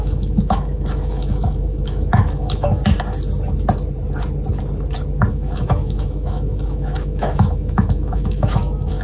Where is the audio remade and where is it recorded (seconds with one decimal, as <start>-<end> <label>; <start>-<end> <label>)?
0.0-2.8 remade; 2.8-5.3 recorded; 5.3-9.0 remade